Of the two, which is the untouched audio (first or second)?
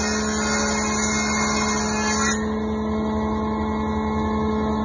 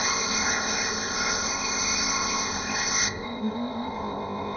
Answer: first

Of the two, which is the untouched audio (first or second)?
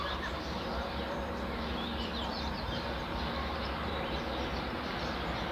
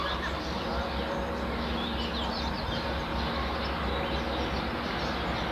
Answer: second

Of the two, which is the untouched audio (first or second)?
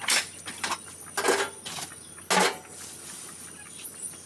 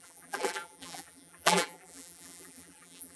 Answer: first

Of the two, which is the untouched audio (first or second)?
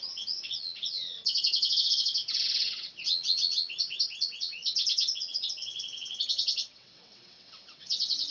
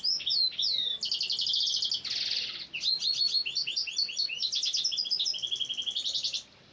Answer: second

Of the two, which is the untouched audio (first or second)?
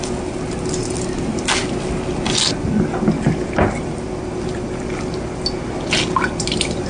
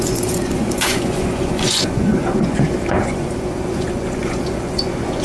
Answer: first